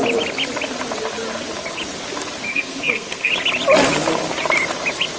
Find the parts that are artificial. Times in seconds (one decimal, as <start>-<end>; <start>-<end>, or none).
2.5-3.3